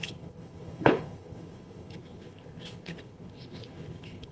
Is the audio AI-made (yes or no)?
yes